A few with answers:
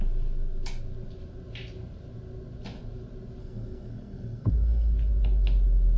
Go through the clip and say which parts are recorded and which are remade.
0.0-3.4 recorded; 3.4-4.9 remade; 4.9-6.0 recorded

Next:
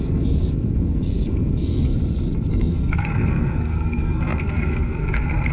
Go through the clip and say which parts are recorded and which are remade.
0.0-1.9 remade; 1.9-2.5 recorded; 2.5-5.5 remade

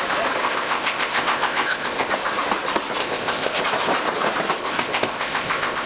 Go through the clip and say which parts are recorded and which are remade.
0.0-0.4 recorded; 0.4-2.1 remade; 2.1-3.0 recorded; 3.0-3.6 remade; 3.6-4.6 recorded; 4.6-5.9 remade

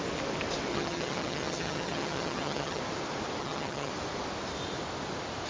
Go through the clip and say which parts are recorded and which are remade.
0.0-0.7 recorded; 0.7-2.8 remade; 2.8-3.4 recorded; 3.4-3.9 remade; 3.9-5.5 recorded

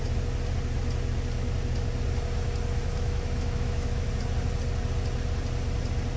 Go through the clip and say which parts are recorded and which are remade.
0.0-2.8 recorded; 2.8-4.1 remade; 4.1-6.2 recorded

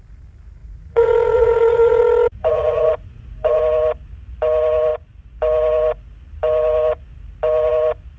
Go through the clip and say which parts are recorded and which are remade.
0.0-0.6 recorded; 0.6-2.0 remade; 2.0-2.4 recorded; 2.4-3.6 remade; 3.6-8.2 recorded

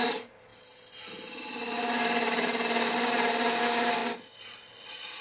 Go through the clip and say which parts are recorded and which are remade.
0.0-5.2 recorded

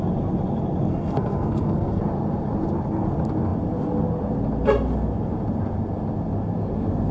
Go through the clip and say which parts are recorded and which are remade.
0.0-0.8 recorded; 0.8-2.0 remade; 2.0-7.1 recorded